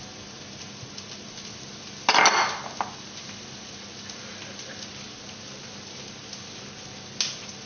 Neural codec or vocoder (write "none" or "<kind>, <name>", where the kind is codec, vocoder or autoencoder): none